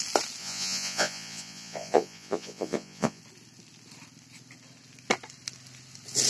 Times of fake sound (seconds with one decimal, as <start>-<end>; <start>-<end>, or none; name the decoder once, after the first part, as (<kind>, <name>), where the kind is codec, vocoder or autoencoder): 0.4-3.2 (vocoder, Vocos)